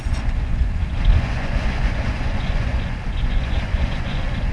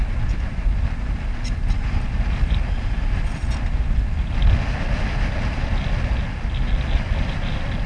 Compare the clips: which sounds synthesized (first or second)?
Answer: first